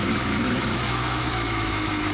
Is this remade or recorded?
remade